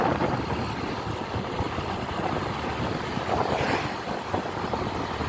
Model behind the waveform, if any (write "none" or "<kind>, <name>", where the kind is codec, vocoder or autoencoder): none